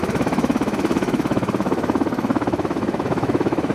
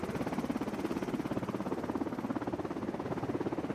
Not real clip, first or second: first